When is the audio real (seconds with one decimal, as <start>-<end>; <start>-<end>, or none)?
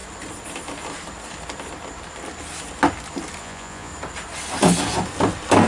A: 0.0-3.4; 3.9-5.7